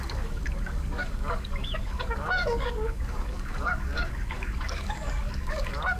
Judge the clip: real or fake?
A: fake